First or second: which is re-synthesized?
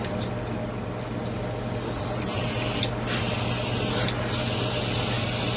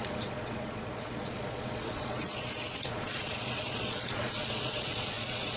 second